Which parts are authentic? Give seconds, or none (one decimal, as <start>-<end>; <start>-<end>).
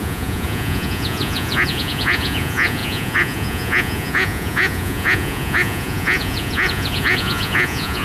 none